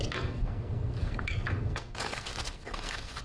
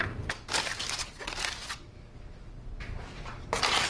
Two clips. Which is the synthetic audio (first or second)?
first